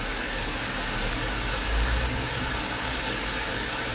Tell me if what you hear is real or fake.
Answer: fake